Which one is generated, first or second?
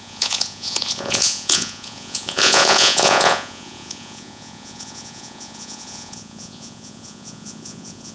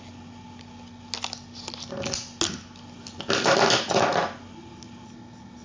first